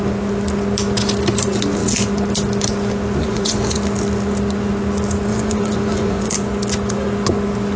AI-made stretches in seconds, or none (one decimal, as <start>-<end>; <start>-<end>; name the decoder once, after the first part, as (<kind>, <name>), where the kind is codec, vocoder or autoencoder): 3.2-3.8 (vocoder, Vocos); 5.3-6.3